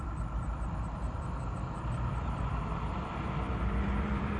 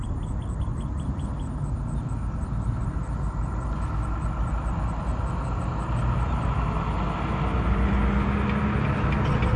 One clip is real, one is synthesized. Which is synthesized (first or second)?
first